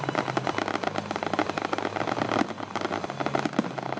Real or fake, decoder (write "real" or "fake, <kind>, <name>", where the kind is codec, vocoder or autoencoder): real